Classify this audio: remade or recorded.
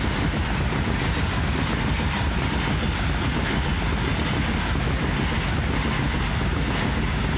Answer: recorded